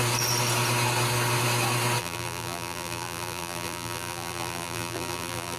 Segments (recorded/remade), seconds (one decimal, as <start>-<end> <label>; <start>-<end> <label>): 0.0-2.0 recorded; 2.0-5.6 remade